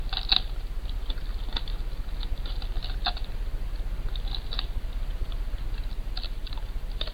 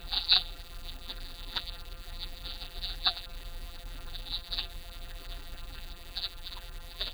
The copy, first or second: second